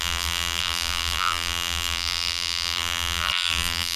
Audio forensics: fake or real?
fake